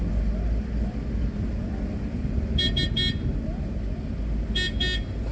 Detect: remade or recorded recorded